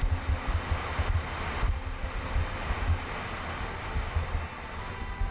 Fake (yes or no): no